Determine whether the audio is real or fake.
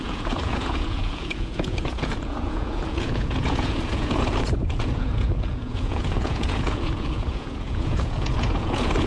fake